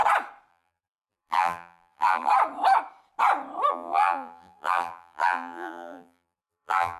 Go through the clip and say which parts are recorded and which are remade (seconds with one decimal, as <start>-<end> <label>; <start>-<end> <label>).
0.0-0.5 recorded; 0.5-2.3 remade; 2.3-3.7 recorded; 3.7-7.0 remade